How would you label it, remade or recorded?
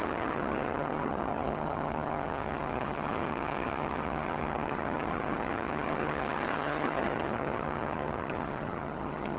remade